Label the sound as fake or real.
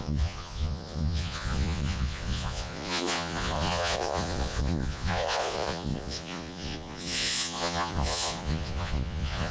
fake